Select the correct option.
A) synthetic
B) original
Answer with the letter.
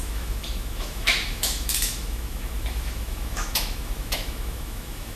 A